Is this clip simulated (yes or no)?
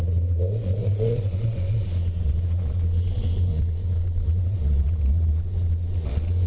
yes